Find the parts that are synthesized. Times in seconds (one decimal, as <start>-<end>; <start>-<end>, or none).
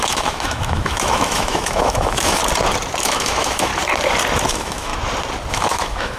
0.0-2.4; 3.0-3.7; 4.5-4.9; 5.5-6.2